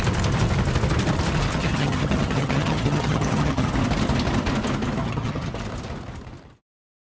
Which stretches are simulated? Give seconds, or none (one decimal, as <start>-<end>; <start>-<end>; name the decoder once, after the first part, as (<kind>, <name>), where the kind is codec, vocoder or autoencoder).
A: 1.5-3.7 (vocoder, HiFi-GAN); 5.0-5.5